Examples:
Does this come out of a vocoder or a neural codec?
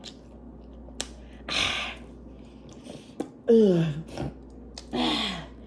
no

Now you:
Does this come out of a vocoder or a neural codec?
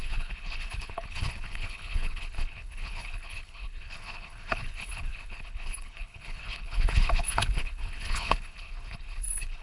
yes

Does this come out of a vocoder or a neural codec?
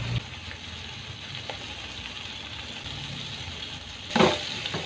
no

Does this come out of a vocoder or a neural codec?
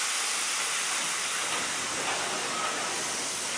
no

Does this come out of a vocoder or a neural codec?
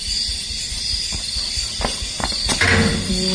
no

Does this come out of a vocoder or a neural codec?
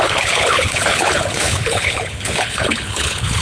yes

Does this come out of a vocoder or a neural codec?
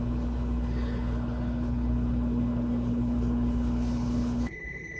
yes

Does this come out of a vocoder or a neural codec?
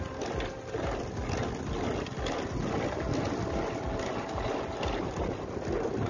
no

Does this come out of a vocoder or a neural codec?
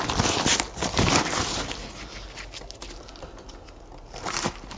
no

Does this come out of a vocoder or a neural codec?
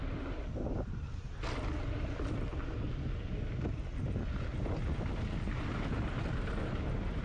no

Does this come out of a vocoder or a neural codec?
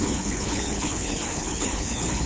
yes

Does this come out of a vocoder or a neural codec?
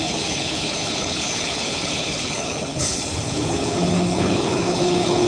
yes